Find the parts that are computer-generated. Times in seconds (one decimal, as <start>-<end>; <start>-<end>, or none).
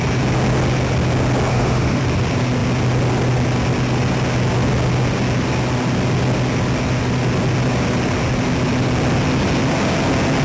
1.5-2.0